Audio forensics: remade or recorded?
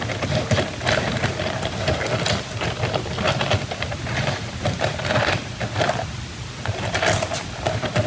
recorded